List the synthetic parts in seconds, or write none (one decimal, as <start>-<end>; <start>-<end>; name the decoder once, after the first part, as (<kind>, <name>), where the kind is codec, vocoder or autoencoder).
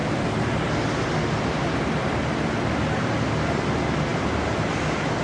0.0-0.7 (vocoder, BigVGAN v2)